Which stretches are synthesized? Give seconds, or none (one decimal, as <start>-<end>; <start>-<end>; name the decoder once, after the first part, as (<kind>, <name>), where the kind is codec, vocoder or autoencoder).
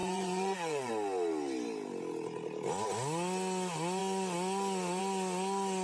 0.0-0.9 (vocoder, Vocos)